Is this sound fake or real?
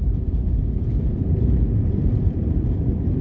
fake